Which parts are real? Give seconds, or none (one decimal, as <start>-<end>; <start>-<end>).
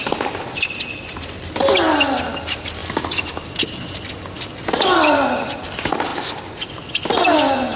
0.0-7.8